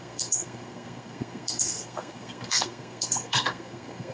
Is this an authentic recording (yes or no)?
no